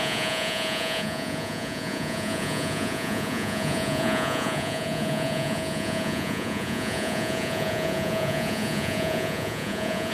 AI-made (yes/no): yes